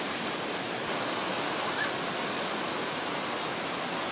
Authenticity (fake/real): real